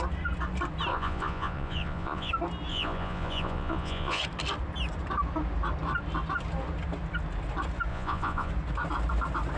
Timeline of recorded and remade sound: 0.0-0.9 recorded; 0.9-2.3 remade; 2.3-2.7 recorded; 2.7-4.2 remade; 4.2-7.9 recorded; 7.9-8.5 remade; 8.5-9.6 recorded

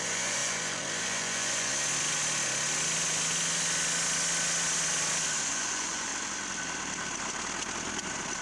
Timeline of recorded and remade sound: 0.0-1.7 remade; 1.7-5.4 recorded; 5.4-6.1 remade; 6.1-8.4 recorded